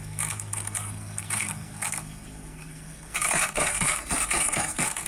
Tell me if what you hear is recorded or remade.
remade